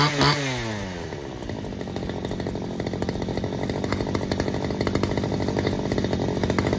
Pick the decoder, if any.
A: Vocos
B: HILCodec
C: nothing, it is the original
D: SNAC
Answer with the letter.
C